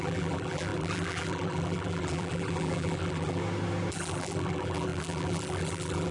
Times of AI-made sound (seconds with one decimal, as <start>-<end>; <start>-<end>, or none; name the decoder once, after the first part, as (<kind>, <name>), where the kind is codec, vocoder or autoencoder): 0.0-3.4 (vocoder, BigVGAN v2); 3.9-6.1